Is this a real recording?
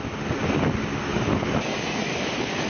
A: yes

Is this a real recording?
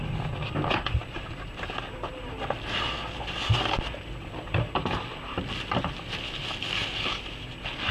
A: yes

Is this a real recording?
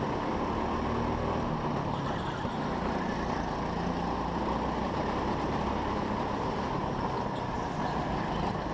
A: yes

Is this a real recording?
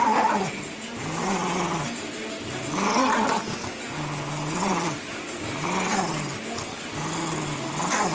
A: yes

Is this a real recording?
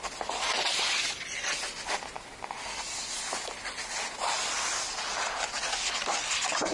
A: yes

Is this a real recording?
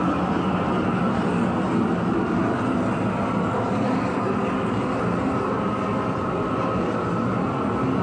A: yes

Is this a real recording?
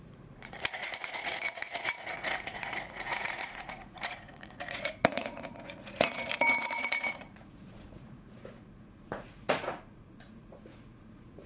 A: no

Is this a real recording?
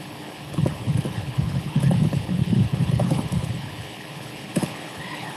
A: no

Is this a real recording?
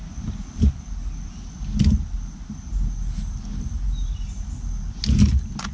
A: yes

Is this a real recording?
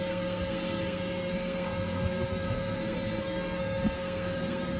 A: no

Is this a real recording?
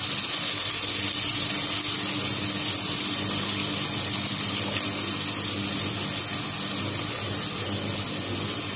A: yes